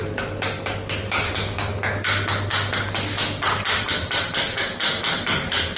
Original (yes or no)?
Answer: yes